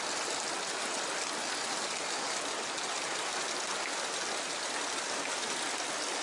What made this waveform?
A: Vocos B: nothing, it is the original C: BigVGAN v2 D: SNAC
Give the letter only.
B